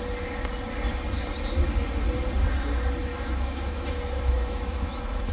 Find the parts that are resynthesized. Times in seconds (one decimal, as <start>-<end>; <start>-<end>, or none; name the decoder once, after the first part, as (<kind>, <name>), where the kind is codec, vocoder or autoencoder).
3.1-5.3 (autoencoder, DAC-VAE)